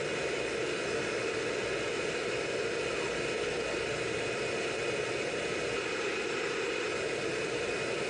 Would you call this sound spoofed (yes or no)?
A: no